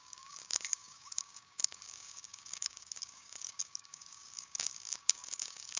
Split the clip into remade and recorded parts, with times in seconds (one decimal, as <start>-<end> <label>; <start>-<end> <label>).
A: 0.0-5.8 remade